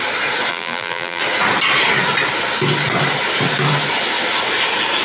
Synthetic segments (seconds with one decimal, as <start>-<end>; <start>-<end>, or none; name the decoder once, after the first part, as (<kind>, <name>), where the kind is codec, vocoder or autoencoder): 0.5-1.2 (vocoder, BigVGAN v2)

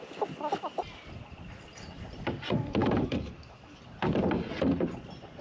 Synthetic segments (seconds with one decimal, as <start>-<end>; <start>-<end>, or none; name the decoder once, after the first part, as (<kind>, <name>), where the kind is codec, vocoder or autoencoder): 2.8-3.8 (autoencoder, DAC-VAE)

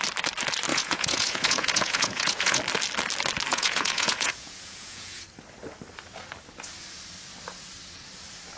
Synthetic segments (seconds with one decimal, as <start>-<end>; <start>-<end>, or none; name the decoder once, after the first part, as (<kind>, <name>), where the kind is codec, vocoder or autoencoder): 0.7-2.6 (vocoder, Vocos); 3.5-5.2

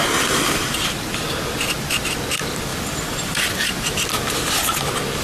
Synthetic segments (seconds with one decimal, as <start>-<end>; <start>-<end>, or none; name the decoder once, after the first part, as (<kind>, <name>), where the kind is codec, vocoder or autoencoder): none